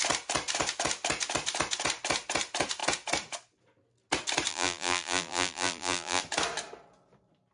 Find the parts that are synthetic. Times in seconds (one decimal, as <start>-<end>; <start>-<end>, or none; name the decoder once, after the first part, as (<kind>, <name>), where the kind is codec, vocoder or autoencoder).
4.5-6.2 (vocoder, BigVGAN v2)